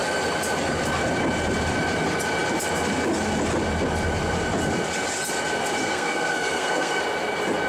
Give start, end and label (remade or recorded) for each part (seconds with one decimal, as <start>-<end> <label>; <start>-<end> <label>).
0.0-5.8 recorded; 5.8-7.0 remade; 7.0-7.7 recorded